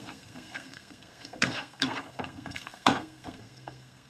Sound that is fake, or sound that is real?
fake